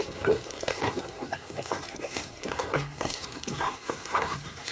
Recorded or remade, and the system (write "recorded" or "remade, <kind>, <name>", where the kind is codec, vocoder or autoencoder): remade, codec, SNAC